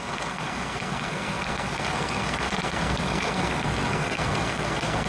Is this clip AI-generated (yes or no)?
yes